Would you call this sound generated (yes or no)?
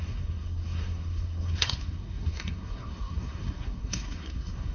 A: yes